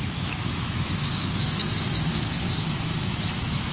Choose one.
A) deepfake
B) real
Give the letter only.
A